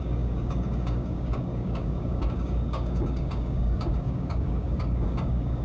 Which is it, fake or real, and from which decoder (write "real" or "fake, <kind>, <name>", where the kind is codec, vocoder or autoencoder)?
fake, codec, DAC